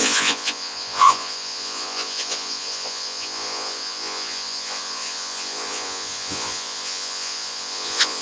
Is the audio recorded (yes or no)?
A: no